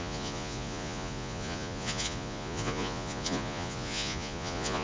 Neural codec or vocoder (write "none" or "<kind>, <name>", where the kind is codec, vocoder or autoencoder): vocoder, Vocos